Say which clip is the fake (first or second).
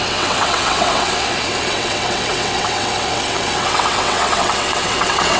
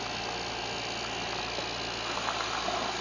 first